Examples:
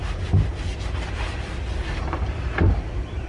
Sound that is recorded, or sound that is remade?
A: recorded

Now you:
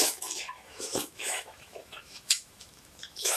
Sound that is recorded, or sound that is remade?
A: remade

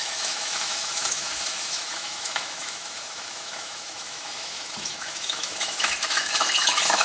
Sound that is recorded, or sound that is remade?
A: remade